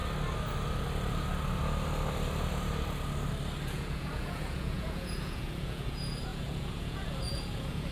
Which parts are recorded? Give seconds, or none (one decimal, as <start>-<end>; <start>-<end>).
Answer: 0.0-3.6